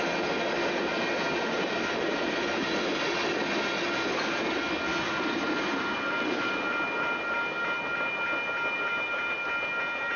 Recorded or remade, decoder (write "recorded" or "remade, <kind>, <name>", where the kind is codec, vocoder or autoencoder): recorded